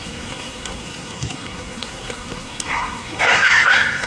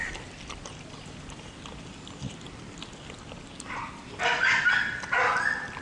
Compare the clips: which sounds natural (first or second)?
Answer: second